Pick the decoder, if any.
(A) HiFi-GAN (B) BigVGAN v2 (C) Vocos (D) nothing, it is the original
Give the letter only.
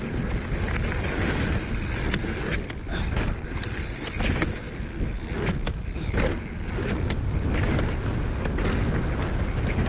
D